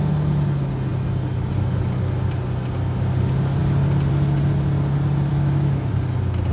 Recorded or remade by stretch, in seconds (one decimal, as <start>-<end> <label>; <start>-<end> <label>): 0.0-5.3 recorded; 5.3-5.9 remade; 5.9-6.5 recorded